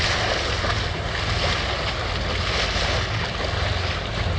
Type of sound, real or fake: real